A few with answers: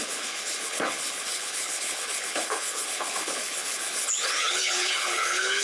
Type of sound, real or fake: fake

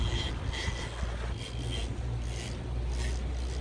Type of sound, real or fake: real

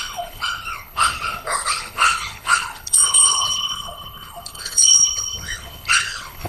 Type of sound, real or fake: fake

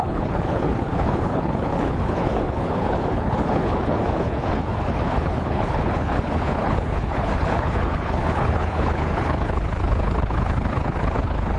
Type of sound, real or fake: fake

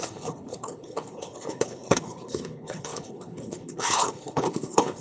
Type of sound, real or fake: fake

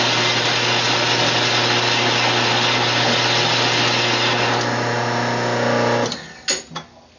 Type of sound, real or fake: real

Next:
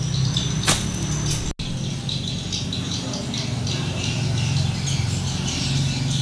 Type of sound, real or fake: real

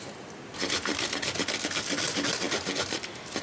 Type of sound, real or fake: real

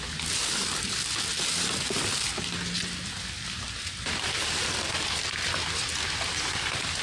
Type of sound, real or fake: real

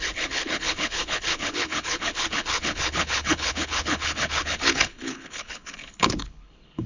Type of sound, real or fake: fake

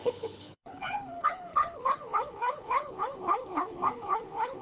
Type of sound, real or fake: fake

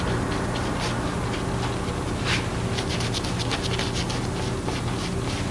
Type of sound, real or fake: real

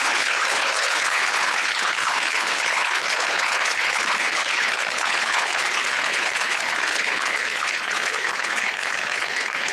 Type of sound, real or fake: fake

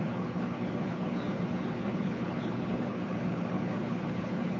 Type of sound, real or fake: fake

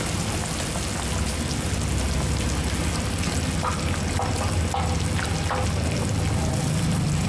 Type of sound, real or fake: real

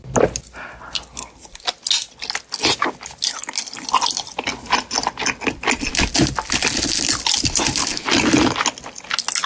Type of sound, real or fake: real